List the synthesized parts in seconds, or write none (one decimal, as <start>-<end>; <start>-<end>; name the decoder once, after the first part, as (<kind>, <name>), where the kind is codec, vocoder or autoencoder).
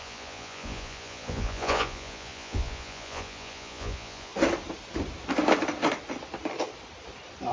0.0-4.3 (vocoder, Vocos)